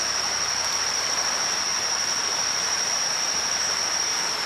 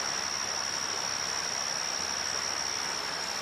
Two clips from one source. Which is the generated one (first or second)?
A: first